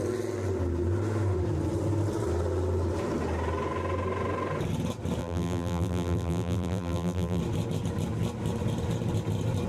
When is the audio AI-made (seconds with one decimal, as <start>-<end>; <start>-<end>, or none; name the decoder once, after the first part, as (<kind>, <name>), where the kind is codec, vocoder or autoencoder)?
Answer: 5.2-7.4 (vocoder, BigVGAN v2)